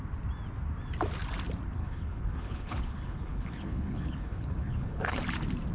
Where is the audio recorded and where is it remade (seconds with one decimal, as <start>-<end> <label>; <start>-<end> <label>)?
0.0-1.8 recorded; 1.8-5.2 remade; 5.2-5.7 recorded